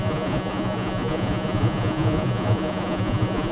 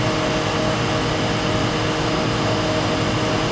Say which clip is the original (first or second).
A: second